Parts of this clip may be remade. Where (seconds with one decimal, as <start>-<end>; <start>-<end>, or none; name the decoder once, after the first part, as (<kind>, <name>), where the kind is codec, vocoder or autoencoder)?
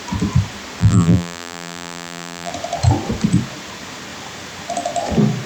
0.8-2.5 (vocoder, BigVGAN v2)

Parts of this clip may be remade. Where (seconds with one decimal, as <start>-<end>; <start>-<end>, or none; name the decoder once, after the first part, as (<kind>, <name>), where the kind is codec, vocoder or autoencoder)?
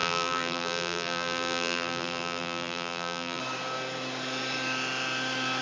0.0-3.4 (vocoder, BigVGAN v2)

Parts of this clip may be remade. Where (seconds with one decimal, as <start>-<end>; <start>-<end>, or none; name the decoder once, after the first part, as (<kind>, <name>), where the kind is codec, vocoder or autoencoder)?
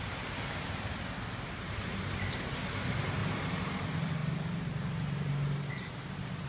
0.0-0.9 (vocoder, BigVGAN v2); 3.2-3.7; 4.2-5.3